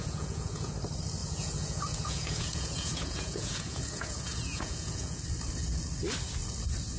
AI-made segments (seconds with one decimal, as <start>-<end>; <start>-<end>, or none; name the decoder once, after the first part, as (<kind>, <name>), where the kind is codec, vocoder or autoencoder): 0.0-0.7 (vocoder, Vocos); 1.2-5.2